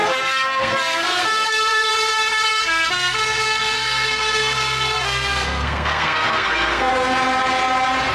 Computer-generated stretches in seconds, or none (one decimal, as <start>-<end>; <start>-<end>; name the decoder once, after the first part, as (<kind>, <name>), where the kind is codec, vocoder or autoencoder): 0.0-1.9 (codec, SNAC); 2.5-6.9